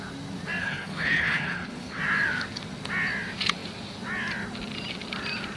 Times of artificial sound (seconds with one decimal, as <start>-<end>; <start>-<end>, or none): 0.6-2.0